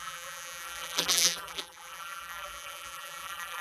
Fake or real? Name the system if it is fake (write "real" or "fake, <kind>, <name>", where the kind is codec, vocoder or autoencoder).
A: fake, vocoder, BigVGAN v2